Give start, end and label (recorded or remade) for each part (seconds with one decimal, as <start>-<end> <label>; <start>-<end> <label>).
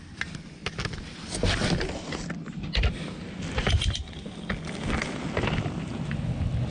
0.0-6.7 recorded